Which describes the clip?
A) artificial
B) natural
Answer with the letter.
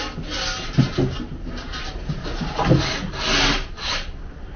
B